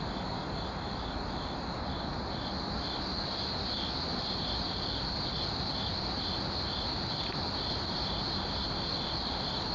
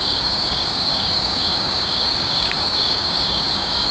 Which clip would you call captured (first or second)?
first